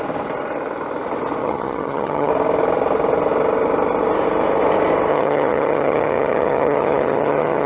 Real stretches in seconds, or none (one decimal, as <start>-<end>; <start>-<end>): 0.0-1.4; 2.3-5.1